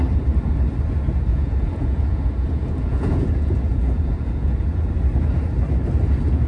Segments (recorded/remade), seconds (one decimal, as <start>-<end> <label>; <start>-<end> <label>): 0.0-1.3 recorded; 1.3-4.9 remade; 4.9-6.5 recorded